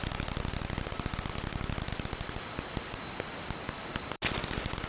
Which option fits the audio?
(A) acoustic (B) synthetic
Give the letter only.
A